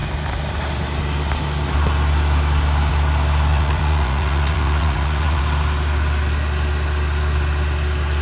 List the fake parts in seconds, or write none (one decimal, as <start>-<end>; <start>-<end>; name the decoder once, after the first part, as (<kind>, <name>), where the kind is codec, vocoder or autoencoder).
3.5-5.4 (vocoder, Vocos)